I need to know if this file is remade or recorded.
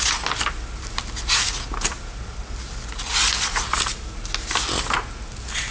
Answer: recorded